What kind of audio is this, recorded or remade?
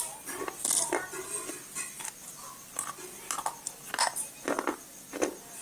recorded